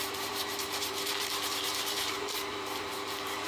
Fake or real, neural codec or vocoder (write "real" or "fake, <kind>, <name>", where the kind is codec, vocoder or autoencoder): fake, vocoder, BigVGAN v2